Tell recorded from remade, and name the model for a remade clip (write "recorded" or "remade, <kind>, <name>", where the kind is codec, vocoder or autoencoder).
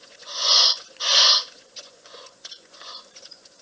remade, vocoder, Vocos